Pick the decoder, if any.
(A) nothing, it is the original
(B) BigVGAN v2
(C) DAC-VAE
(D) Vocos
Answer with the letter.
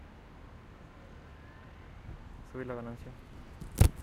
A